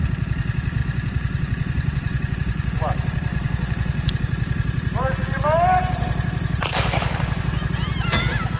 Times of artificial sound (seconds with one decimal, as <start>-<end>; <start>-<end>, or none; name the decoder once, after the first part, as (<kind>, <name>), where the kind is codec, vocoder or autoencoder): 0.8-2.8 (vocoder, Vocos); 3.3-4.1